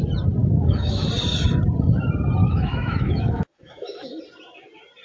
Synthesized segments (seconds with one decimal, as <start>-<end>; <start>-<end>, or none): 0.4-1.1; 2.4-4.2